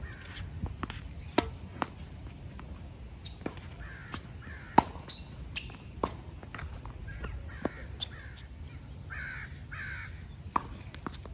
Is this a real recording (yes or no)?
yes